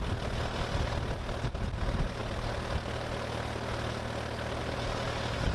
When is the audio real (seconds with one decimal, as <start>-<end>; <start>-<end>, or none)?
0.0-5.5